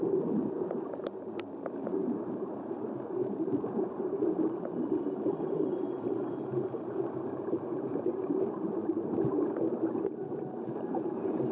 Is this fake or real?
fake